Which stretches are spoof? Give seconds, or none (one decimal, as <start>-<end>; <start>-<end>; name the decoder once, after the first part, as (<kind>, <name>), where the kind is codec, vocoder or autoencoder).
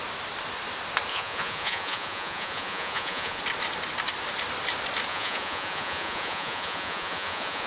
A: 1.1-3.4 (vocoder, Vocos); 5.1-7.7